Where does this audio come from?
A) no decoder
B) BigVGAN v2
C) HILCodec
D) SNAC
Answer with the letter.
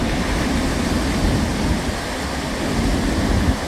A